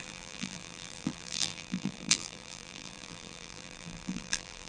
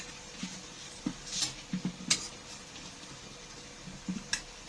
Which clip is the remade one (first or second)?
first